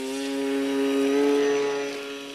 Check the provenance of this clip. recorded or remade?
recorded